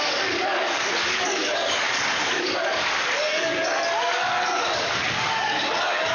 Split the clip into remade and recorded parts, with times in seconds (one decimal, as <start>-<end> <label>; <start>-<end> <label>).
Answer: 0.0-3.5 remade; 3.5-4.0 recorded; 4.0-6.1 remade

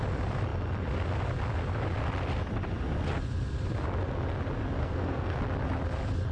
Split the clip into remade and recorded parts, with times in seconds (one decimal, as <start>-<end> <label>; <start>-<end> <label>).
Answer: 0.0-4.8 recorded; 4.8-5.4 remade; 5.4-6.3 recorded

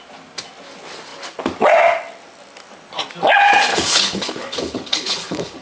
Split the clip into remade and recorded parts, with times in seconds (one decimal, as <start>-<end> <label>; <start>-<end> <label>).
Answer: 0.0-3.7 recorded; 3.7-5.6 remade

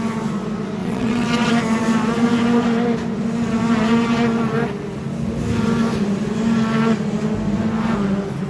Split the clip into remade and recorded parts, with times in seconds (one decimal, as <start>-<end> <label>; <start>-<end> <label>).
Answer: 0.0-0.8 recorded; 0.8-1.5 remade; 1.5-8.5 recorded

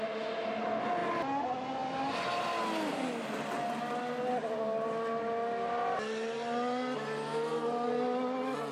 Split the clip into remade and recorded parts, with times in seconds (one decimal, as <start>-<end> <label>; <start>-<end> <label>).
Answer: 0.0-8.7 recorded

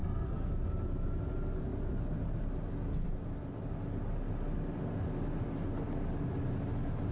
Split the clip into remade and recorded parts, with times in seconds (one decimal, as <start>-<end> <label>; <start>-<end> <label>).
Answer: 0.0-0.5 remade; 0.5-7.1 recorded

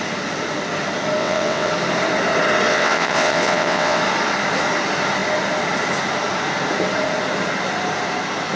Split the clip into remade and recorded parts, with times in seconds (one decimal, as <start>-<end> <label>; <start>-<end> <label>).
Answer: 0.0-1.2 recorded; 1.2-1.7 remade; 1.7-2.7 recorded; 2.7-4.0 remade; 4.0-8.6 recorded